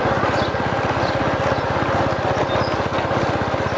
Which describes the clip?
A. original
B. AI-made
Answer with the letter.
A